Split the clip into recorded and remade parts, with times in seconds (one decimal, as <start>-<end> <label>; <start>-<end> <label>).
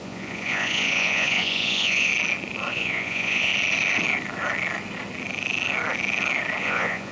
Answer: 0.0-2.1 remade; 2.1-2.7 recorded; 2.7-3.5 remade; 3.5-6.6 recorded; 6.6-7.1 remade